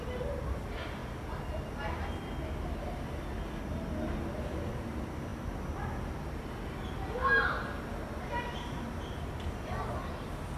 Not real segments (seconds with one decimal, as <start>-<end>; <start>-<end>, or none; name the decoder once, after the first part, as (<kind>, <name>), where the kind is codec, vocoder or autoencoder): none